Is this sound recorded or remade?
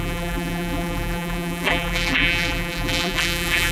remade